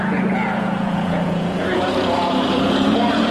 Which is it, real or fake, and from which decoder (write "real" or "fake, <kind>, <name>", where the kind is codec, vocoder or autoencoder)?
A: fake, vocoder, Vocos